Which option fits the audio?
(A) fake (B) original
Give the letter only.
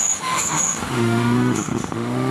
A